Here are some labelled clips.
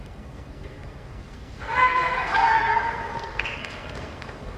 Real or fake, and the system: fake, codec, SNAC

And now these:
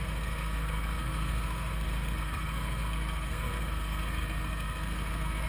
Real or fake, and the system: fake, codec, SNAC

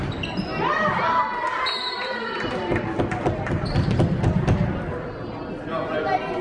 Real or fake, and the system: real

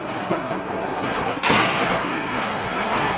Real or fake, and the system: fake, codec, SNAC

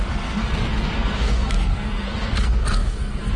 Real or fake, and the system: fake, codec, SNAC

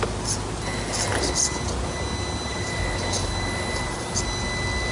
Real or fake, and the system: real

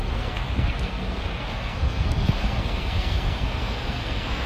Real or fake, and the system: fake, codec, SNAC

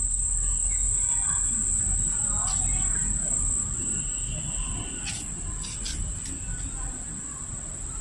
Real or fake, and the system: real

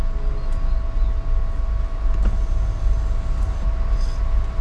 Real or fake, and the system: real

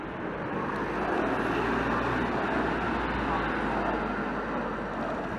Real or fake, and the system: real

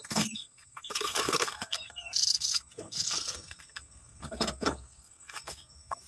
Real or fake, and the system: fake, codec, SNAC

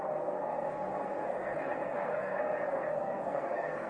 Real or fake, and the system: fake, codec, SNAC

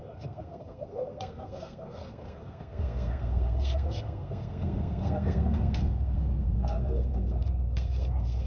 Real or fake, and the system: fake, codec, SNAC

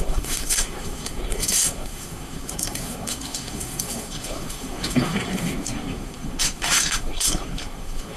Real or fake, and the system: fake, codec, SNAC